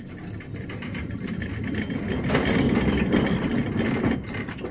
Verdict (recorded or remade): recorded